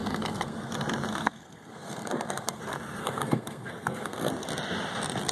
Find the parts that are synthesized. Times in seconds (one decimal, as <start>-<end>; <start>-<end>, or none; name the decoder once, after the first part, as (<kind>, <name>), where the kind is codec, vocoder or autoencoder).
0.0-0.7 (codec, SNAC); 1.1-2.6; 3.0-4.3

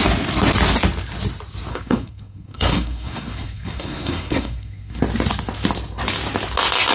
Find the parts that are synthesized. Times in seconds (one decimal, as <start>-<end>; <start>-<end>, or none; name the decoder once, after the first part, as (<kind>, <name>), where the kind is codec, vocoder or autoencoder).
1.7-5.0 (codec, SNAC)

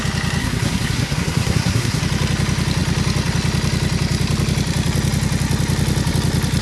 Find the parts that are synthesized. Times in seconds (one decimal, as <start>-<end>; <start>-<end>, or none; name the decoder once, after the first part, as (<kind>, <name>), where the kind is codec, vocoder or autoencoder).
0.4-2.0 (codec, SNAC)

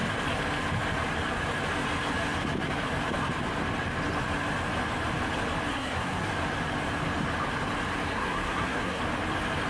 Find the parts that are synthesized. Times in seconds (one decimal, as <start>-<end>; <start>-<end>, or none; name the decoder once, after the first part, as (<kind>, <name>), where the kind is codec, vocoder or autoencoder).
5.7-6.3 (codec, SNAC); 8.1-9.0